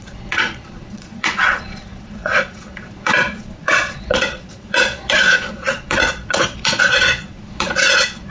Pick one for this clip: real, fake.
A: fake